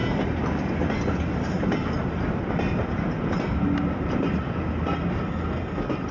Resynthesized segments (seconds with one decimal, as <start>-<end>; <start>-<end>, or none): none